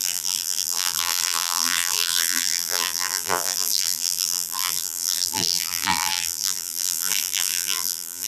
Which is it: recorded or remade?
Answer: remade